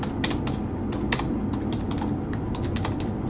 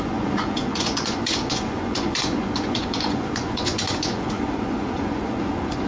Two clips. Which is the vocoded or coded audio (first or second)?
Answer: second